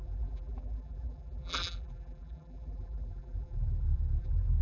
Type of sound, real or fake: fake